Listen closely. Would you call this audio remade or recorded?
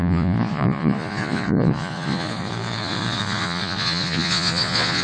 remade